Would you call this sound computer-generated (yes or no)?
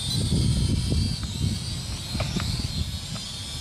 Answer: no